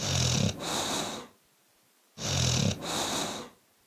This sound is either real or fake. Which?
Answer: real